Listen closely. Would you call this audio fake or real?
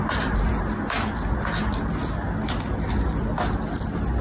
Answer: real